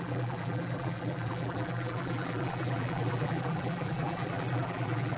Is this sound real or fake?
fake